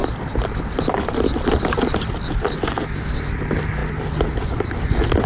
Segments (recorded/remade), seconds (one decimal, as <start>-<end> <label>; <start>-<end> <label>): 0.0-5.3 recorded